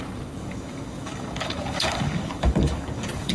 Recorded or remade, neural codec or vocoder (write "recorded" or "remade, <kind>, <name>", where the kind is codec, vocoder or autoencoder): remade, codec, DAC